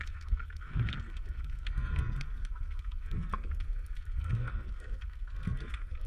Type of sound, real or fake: fake